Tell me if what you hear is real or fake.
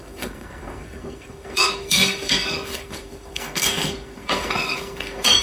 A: fake